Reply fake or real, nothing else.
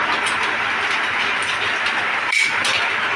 real